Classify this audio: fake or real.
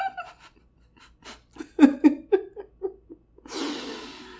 real